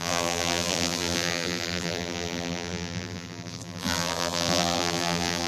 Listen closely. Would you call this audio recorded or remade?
remade